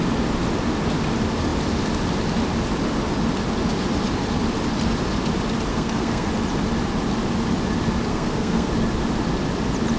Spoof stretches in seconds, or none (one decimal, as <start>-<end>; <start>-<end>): 5.7-6.3; 8.1-8.7